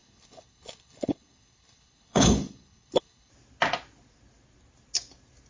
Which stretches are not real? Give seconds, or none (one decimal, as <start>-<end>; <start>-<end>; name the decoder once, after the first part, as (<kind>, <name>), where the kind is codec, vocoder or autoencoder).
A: 0.0-3.3 (codec, HILCodec)